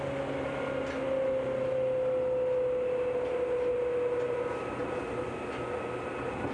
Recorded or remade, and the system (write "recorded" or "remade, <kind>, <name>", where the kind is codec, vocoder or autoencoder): recorded